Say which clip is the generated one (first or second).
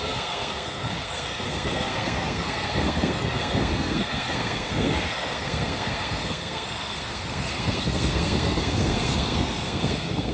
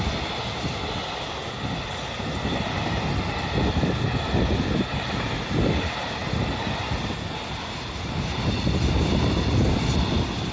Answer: first